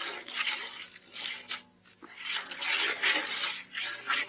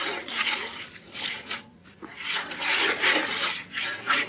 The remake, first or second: second